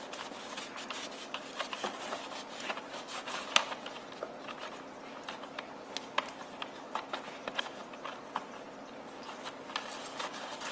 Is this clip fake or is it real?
real